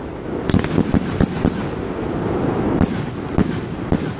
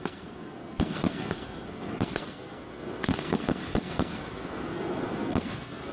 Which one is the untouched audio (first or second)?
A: first